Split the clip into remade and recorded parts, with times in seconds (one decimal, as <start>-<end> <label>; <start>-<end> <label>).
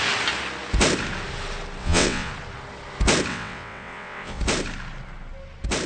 0.0-1.8 recorded; 1.8-2.3 remade; 2.3-3.3 recorded; 3.3-4.4 remade; 4.4-5.9 recorded